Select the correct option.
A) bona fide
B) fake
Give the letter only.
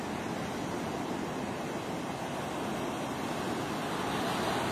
A